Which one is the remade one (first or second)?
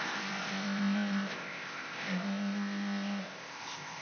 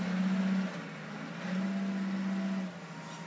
first